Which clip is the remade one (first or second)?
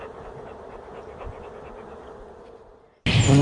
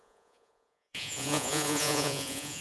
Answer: second